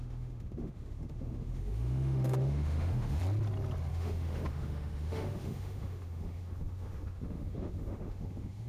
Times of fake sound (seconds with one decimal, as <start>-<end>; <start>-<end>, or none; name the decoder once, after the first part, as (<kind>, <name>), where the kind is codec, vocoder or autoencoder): 0.0-3.2 (autoencoder, DAC-VAE); 3.9-8.7